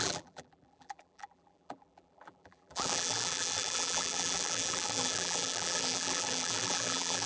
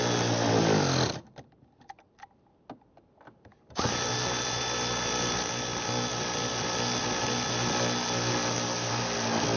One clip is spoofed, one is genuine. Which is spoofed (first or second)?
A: first